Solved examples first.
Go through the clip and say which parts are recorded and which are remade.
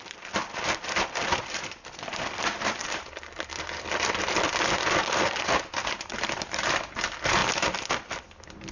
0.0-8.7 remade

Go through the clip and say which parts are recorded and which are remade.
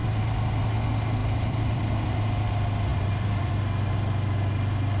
0.0-0.6 remade; 0.6-1.2 recorded; 1.2-1.8 remade; 1.8-2.9 recorded; 2.9-3.5 remade; 3.5-5.0 recorded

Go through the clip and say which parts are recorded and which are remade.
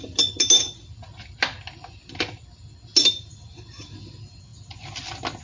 0.0-5.4 recorded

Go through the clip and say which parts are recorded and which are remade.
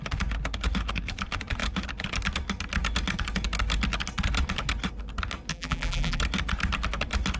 0.0-5.5 recorded; 5.5-6.2 remade; 6.2-7.4 recorded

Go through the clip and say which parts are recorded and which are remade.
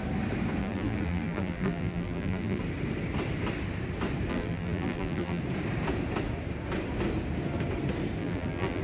0.0-0.6 recorded; 0.6-2.6 remade; 2.6-4.3 recorded; 4.3-5.4 remade; 5.4-8.2 recorded; 8.2-8.8 remade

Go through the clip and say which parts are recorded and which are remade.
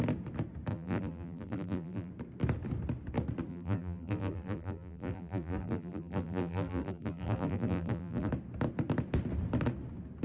0.0-0.7 recorded; 0.7-2.1 remade; 2.1-3.5 recorded; 3.5-8.3 remade; 8.3-10.2 recorded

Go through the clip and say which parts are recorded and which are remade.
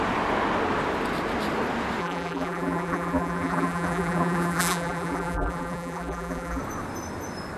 0.0-2.0 recorded; 2.0-6.6 remade; 6.6-7.6 recorded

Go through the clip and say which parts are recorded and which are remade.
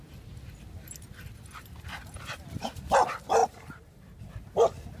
0.0-3.4 recorded; 3.4-4.2 remade; 4.2-5.0 recorded